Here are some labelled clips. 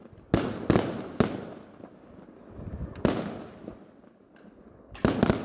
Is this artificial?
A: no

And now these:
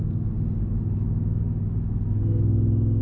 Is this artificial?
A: no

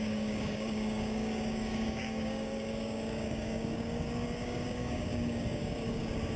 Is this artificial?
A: yes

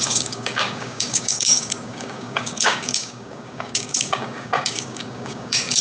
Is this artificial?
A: yes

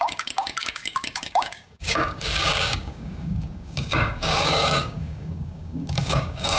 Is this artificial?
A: yes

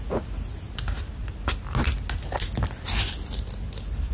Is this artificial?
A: no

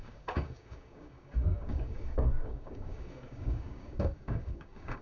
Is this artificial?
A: yes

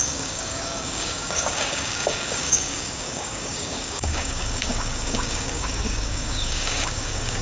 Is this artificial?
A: yes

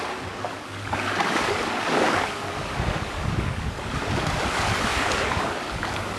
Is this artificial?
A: yes